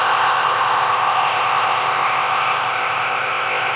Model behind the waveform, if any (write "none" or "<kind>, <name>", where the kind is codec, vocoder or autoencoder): codec, ZipCodec